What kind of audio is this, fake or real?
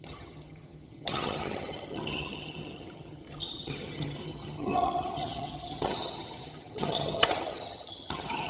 fake